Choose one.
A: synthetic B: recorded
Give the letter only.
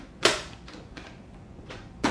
A